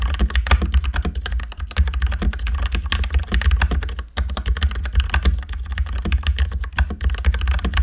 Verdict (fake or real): real